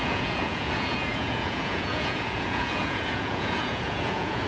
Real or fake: fake